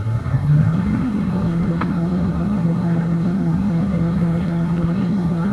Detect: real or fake fake